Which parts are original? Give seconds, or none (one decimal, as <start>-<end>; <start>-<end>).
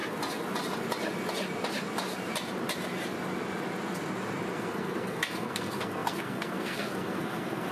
0.0-4.5